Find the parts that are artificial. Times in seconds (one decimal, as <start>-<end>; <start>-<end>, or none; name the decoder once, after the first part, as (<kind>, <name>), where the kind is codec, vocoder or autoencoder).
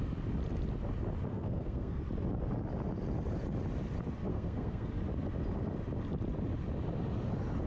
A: 1.3-2.0 (codec, SNAC); 4.3-4.9